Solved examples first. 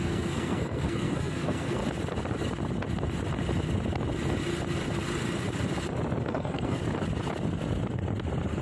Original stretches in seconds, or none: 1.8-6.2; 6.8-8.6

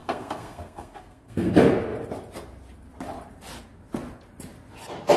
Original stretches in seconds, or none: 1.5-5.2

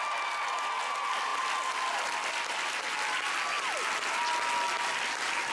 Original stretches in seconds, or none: 0.0-5.5

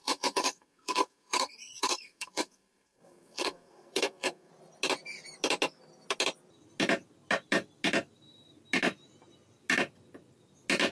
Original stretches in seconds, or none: 4.5-10.9

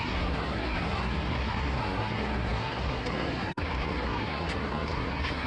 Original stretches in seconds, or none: none

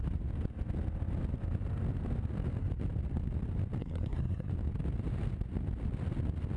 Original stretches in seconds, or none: 0.0-3.8; 4.5-6.6

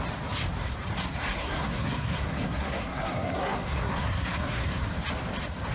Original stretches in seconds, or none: 0.0-1.4; 4.8-5.7

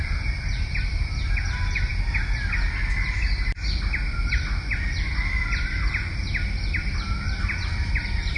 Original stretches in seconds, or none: 0.0-8.4